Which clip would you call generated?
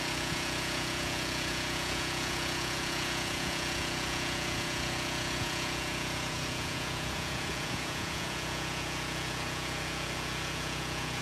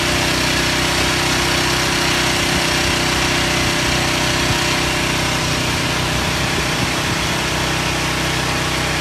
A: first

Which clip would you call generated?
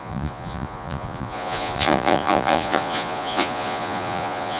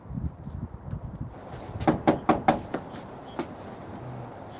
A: first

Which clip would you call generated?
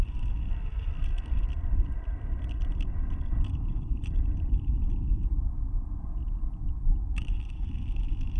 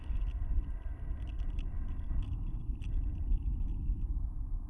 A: first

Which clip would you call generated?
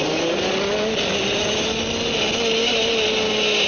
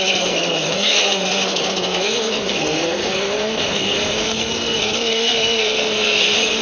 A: second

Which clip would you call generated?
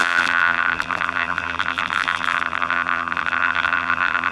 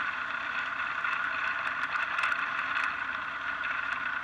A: first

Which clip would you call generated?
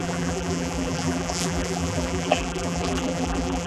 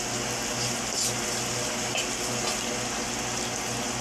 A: first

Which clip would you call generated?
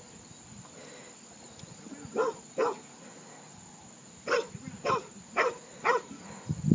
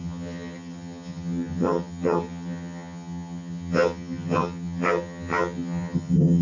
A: second